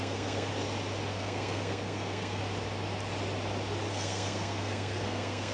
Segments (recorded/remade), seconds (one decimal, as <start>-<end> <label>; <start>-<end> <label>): 0.0-0.5 remade; 0.5-1.1 recorded; 1.1-2.4 remade; 2.4-3.9 recorded; 3.9-5.5 remade